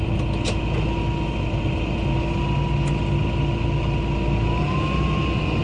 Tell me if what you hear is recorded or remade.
recorded